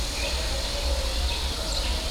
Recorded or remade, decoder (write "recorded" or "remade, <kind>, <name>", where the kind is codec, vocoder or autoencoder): remade, vocoder, BigVGAN v2